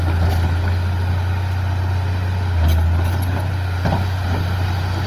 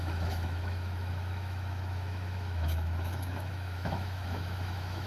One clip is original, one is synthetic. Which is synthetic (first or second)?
second